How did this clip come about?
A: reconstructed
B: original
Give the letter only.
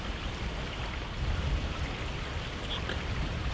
B